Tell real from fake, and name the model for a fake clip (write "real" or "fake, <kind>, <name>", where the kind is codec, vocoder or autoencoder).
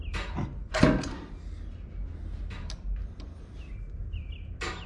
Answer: real